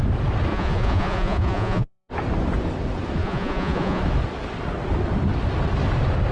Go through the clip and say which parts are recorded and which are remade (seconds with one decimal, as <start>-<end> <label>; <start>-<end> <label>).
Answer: 0.0-0.5 recorded; 0.5-2.1 remade; 2.1-3.2 recorded; 3.2-4.0 remade; 4.0-6.3 recorded